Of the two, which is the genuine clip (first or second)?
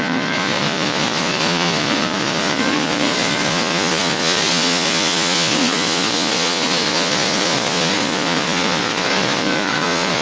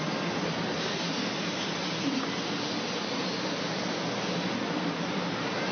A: second